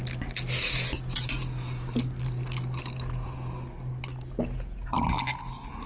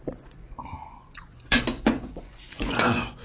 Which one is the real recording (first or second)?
first